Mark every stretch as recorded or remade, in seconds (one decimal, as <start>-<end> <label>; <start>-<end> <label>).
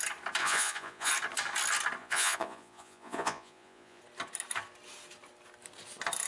0.0-0.4 recorded; 0.4-1.1 remade; 1.1-2.0 recorded; 2.0-4.0 remade; 4.0-6.3 recorded